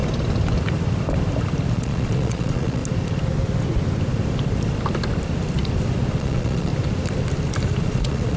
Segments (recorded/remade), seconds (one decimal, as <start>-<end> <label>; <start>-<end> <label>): 0.0-1.7 recorded; 1.7-2.8 remade; 2.8-6.2 recorded; 6.2-6.7 remade; 6.7-7.8 recorded; 7.8-8.4 remade